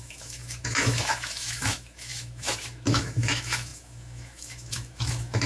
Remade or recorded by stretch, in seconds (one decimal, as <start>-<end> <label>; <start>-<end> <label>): 0.0-5.5 remade